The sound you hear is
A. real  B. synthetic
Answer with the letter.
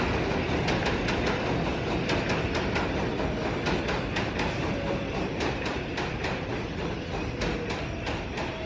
A